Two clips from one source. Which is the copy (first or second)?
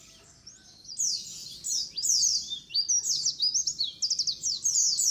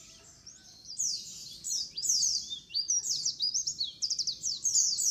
second